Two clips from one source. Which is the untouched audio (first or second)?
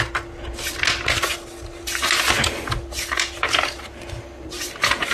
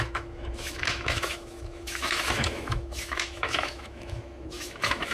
first